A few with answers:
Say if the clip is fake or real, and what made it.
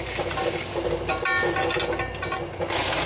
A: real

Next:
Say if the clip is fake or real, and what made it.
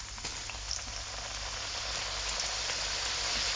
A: real